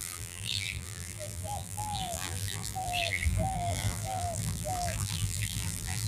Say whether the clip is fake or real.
fake